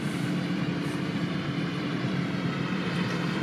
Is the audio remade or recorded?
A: remade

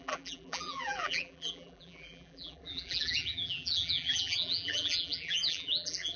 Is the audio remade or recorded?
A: remade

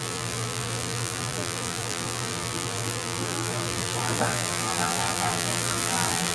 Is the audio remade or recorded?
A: remade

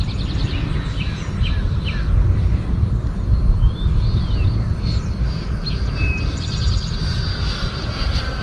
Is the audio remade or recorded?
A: recorded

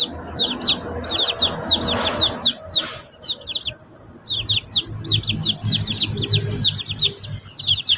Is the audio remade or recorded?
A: recorded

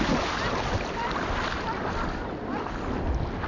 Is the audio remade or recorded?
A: recorded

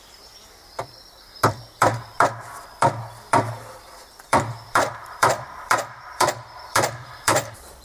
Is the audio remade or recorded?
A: remade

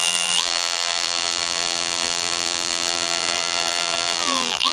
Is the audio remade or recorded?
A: remade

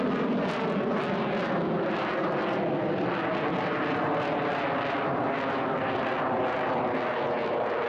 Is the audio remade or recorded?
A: recorded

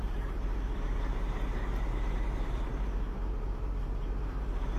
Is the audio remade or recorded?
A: remade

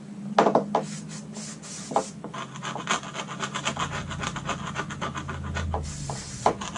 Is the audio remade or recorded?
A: recorded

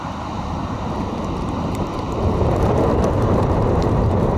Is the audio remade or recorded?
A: remade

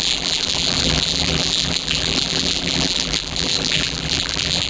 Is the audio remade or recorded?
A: remade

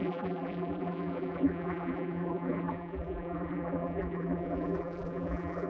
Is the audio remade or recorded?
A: remade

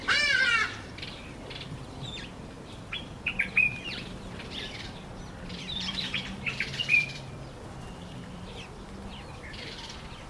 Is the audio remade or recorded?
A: remade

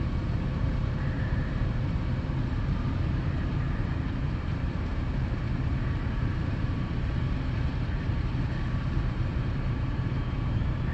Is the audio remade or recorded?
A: remade